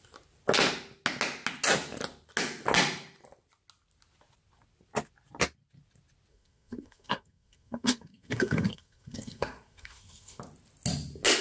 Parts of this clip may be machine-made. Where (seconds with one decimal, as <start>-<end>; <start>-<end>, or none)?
6.3-10.4